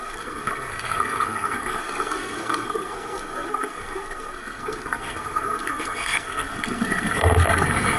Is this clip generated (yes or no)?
yes